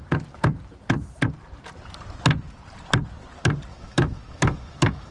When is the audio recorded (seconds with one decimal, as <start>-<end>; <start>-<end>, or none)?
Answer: 0.0-3.7